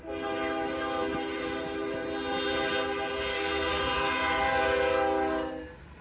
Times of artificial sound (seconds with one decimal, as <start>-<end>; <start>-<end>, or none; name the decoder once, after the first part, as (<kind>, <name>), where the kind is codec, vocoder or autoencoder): 3.3-3.8 (codec, SNAC)